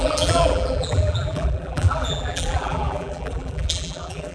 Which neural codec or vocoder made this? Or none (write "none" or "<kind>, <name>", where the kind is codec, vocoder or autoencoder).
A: vocoder, BigVGAN v2